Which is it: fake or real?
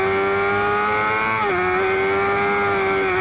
real